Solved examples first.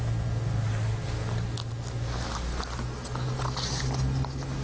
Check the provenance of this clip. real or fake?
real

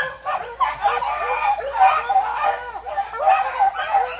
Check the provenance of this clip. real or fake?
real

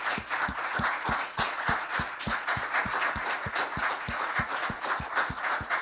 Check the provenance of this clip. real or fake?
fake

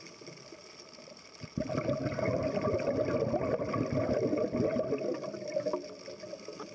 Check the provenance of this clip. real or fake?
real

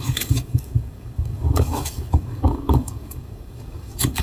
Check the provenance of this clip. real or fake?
fake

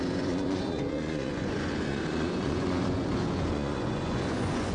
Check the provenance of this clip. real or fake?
fake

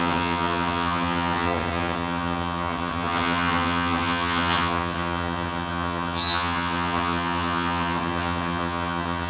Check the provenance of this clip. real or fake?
fake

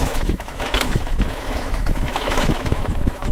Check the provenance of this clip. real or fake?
fake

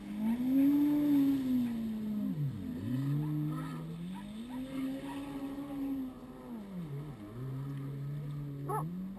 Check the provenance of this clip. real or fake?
real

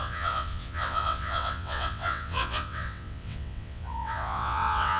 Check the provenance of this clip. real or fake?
fake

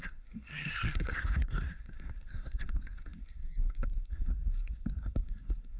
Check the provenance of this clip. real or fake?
fake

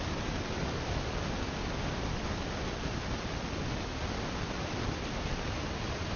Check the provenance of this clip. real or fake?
real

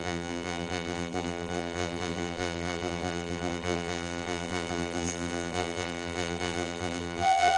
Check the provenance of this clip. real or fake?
fake